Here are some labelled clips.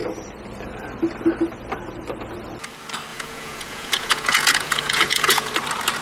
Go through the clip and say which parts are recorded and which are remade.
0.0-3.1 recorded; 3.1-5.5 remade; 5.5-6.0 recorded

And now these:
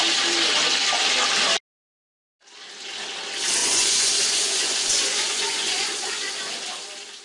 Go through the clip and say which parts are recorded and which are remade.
0.0-3.6 recorded; 3.6-6.3 remade; 6.3-7.2 recorded

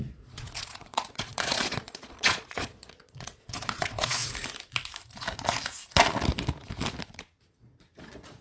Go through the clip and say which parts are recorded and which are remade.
0.0-4.2 remade; 4.2-7.1 recorded; 7.1-8.4 remade

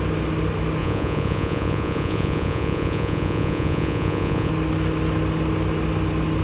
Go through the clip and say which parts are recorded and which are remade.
0.0-0.8 recorded; 0.8-4.5 remade; 4.5-6.4 recorded

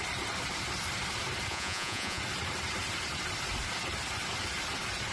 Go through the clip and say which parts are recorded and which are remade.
0.0-1.5 recorded; 1.5-2.2 remade; 2.2-5.1 recorded

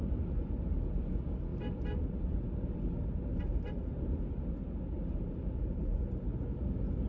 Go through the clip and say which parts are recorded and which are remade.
0.0-7.1 recorded

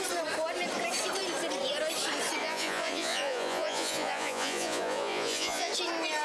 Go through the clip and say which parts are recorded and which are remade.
0.0-2.4 recorded; 2.4-5.7 remade; 5.7-6.2 recorded

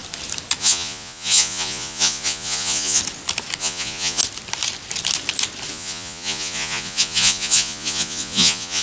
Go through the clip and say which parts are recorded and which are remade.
0.0-0.6 recorded; 0.6-3.0 remade; 3.0-3.6 recorded; 3.6-4.2 remade; 4.2-5.7 recorded; 5.7-8.8 remade